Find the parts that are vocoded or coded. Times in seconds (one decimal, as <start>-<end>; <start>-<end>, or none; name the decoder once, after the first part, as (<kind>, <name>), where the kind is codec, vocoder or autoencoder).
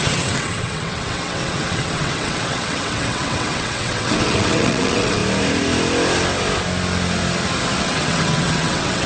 0.0-5.2 (vocoder, WaveNeXt); 7.8-9.1